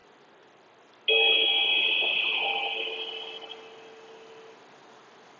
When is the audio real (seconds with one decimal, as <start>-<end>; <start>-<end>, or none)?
0.0-5.4